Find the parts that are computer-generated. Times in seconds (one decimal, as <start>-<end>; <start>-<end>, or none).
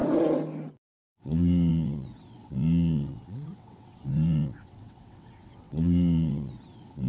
0.7-7.1